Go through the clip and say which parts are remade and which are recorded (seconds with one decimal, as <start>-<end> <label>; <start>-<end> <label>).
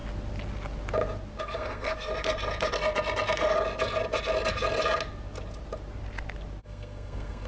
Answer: 0.0-1.4 recorded; 1.4-2.1 remade; 2.1-6.6 recorded; 6.6-7.5 remade